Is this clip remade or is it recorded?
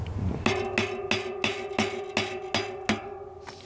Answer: recorded